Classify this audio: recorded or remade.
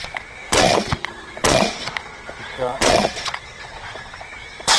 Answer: remade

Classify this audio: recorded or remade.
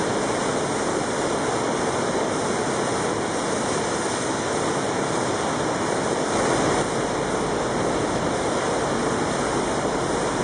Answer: recorded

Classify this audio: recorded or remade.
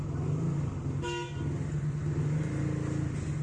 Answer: recorded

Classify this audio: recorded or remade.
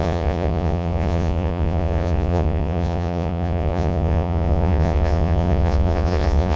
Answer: remade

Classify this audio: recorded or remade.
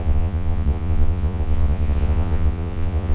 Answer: remade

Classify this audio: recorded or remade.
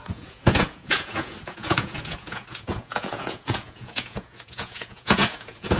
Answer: remade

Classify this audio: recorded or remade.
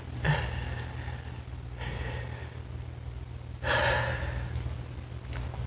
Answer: recorded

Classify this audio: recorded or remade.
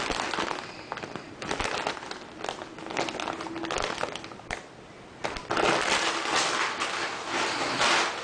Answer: recorded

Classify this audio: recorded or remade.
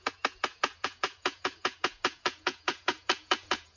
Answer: remade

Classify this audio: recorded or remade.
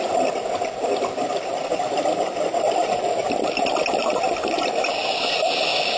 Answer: recorded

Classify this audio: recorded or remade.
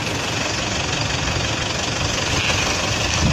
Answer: recorded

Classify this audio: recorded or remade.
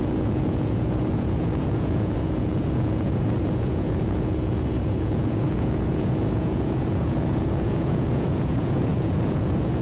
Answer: remade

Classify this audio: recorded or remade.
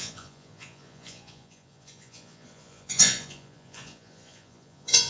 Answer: remade